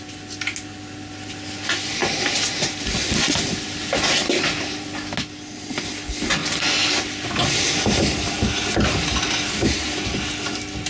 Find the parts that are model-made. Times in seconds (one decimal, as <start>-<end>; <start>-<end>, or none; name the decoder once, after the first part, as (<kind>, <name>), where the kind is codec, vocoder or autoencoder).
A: none